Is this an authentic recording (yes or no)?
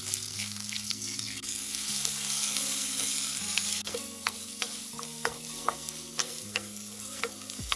no